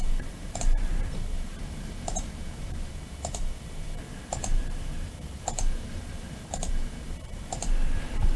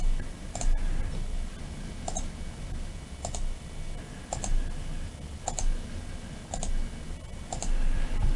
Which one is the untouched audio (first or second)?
second